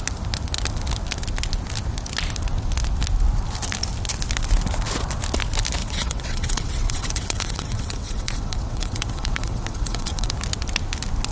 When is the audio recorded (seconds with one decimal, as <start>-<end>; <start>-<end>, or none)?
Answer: 0.0-5.8; 10.3-11.3